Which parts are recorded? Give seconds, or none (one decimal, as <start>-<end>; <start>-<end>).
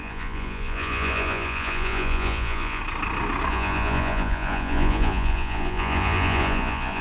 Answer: 2.8-3.5